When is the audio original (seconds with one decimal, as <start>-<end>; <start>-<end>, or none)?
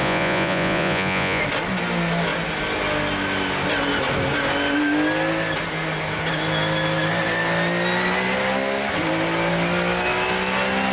1.4-10.9